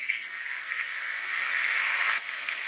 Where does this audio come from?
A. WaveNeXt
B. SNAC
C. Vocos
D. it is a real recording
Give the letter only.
B